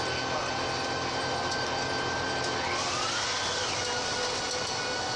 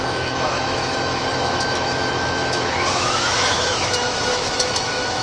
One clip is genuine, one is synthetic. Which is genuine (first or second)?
first